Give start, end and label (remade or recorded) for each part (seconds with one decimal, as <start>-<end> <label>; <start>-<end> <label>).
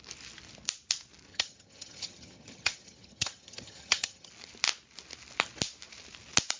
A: 0.0-1.3 recorded; 1.3-4.3 remade; 4.3-6.6 recorded